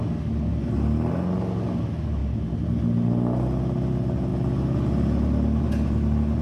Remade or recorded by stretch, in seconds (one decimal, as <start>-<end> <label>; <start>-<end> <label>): 0.0-6.4 recorded